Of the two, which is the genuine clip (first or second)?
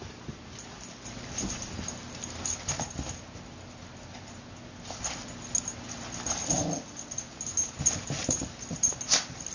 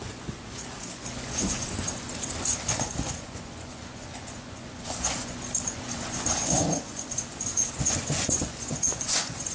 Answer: first